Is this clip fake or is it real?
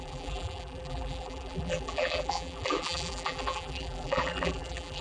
fake